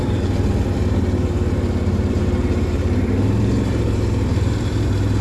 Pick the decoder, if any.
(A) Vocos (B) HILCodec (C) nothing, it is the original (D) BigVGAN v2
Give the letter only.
D